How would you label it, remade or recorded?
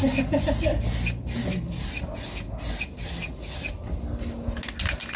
recorded